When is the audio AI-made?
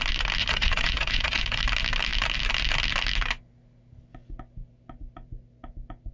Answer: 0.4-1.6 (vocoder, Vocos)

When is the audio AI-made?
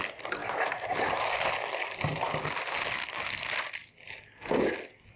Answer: none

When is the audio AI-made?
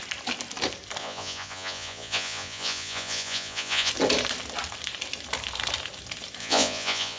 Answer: 1.0-3.9 (vocoder, Vocos); 6.4-7.2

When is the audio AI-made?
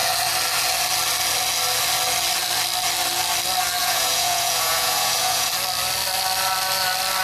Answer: 3.8-5.5 (vocoder, Vocos)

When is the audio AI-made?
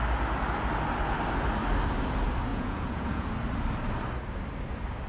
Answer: 2.5-3.3 (vocoder, Vocos)